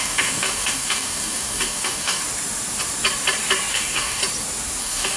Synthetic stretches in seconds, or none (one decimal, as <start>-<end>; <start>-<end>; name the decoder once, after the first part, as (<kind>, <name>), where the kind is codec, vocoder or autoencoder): 0.0-2.2 (codec, DAC); 3.7-4.2; 4.8-5.2